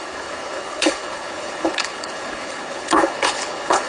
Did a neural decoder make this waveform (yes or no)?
yes